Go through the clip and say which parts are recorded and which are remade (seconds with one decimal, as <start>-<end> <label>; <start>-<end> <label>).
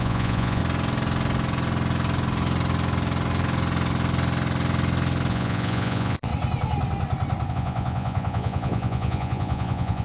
0.0-0.6 remade; 0.6-5.3 recorded; 5.3-6.3 remade; 6.3-7.5 recorded; 7.5-10.0 remade